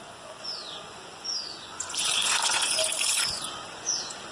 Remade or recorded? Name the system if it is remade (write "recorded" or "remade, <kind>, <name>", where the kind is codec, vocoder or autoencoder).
remade, vocoder, Vocos